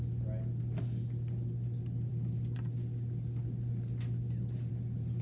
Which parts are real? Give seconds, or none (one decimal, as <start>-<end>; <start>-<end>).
0.0-5.2